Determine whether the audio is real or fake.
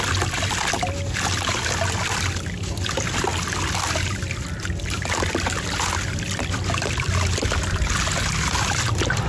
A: real